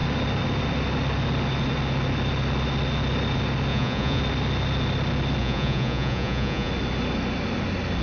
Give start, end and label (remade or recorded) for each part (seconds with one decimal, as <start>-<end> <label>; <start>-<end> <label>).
0.0-3.7 recorded; 3.7-4.2 remade; 4.2-5.4 recorded; 5.4-6.7 remade; 6.7-8.0 recorded